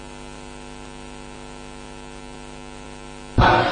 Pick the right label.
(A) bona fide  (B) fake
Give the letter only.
A